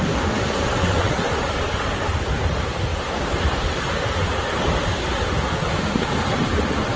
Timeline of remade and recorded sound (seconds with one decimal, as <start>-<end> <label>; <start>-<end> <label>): 0.0-0.8 recorded; 0.8-1.3 remade; 1.3-7.0 recorded